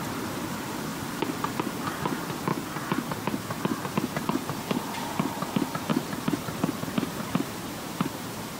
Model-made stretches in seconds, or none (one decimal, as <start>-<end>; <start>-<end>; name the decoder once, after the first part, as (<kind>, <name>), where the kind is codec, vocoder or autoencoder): 0.9-1.5 (vocoder, BigVGAN v2); 5.9-8.6